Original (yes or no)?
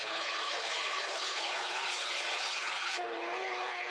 no